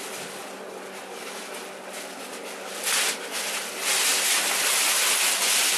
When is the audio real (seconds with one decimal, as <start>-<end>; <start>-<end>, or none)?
0.0-5.8